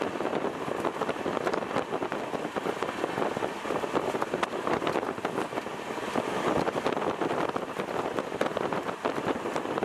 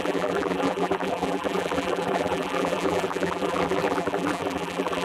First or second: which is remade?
second